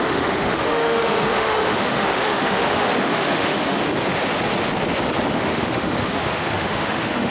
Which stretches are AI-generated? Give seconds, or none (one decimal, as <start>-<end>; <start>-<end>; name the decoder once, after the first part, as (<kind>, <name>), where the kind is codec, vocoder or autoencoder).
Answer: 0.0-3.8 (autoencoder, DAC-VAE); 5.3-7.3